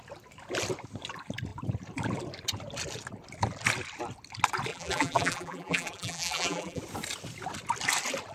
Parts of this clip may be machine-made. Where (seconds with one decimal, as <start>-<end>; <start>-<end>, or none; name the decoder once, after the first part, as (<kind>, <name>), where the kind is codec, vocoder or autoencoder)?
4.7-6.8 (vocoder, BigVGAN v2)